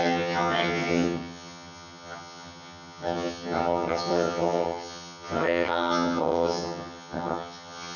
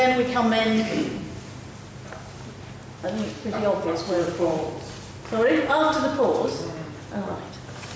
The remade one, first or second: first